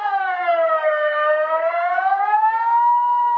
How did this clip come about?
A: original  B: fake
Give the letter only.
B